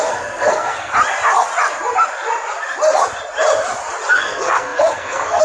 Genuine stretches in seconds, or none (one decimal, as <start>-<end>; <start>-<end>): 0.9-4.1

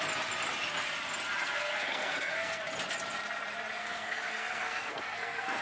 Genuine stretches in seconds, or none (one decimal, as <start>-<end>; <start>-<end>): 0.0-1.4; 2.6-3.8

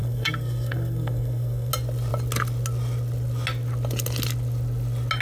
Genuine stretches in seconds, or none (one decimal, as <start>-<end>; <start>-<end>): 1.7-5.2

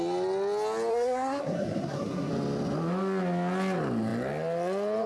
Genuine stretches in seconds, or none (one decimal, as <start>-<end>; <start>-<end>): 0.0-0.9; 2.3-5.1

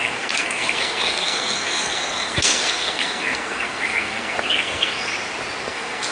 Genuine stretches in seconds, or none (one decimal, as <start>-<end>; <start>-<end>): 5.1-5.6

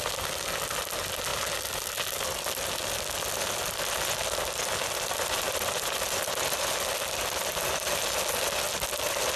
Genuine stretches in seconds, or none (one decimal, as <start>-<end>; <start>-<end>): 0.0-9.4